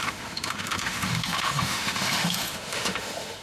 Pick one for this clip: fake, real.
fake